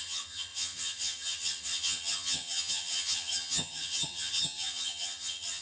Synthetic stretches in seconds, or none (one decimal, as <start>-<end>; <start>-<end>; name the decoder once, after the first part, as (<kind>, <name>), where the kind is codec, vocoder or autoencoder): 0.0-5.6 (vocoder, HiFi-GAN)